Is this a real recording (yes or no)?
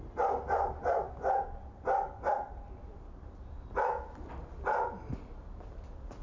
yes